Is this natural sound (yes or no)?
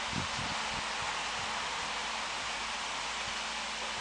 yes